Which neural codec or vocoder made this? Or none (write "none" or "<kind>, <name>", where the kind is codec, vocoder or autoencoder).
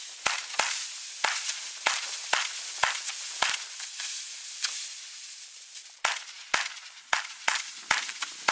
none